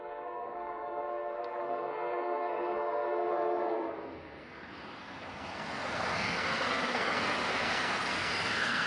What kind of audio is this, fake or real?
fake